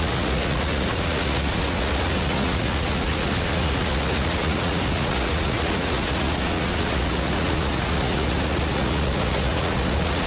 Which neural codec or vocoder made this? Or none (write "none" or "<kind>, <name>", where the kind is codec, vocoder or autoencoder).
vocoder, Vocos